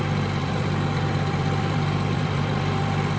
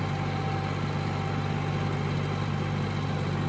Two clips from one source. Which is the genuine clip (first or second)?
second